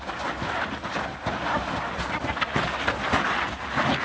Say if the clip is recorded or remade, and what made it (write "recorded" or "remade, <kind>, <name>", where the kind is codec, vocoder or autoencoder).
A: recorded